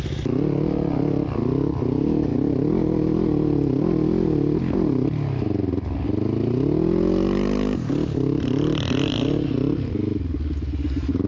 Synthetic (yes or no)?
no